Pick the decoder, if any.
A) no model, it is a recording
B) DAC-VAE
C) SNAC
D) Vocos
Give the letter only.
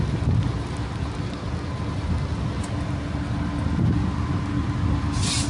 A